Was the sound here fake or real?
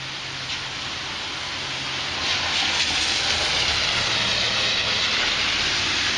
real